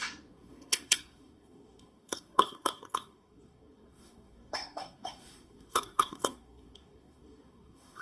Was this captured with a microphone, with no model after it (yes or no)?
no